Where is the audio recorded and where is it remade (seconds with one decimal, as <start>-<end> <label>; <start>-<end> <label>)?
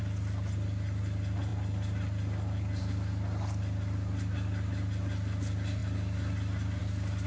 0.0-7.3 recorded